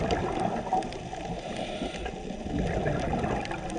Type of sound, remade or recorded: recorded